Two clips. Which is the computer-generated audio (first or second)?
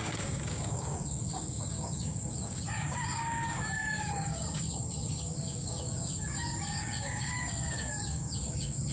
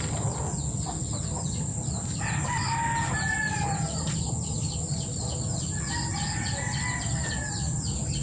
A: first